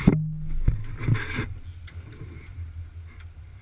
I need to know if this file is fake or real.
real